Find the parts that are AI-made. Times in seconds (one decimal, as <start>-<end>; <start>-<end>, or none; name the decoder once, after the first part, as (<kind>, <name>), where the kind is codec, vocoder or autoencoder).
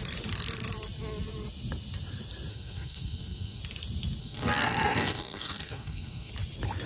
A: 2.5-3.6 (codec, SNAC); 4.2-6.3